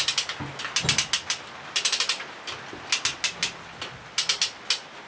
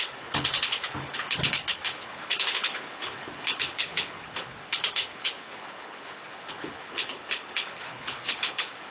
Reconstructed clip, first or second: second